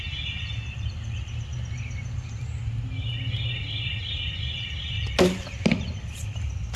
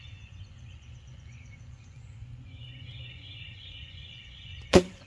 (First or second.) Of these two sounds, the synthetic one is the second